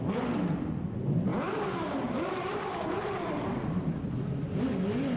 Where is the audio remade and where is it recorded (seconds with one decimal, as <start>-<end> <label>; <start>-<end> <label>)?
0.0-1.3 recorded; 1.3-4.4 remade; 4.4-5.2 recorded

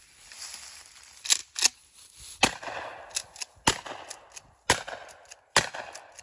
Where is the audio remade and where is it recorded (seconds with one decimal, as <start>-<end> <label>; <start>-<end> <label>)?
0.0-6.2 recorded

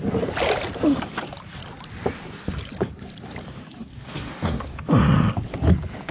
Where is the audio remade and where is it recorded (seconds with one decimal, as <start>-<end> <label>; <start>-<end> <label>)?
0.0-3.9 recorded; 3.9-4.9 remade; 4.9-6.1 recorded